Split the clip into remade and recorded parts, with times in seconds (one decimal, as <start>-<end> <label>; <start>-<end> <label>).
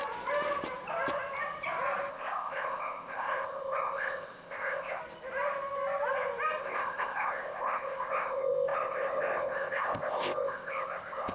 0.0-2.1 recorded; 2.1-5.0 remade; 5.0-6.6 recorded; 6.6-11.3 remade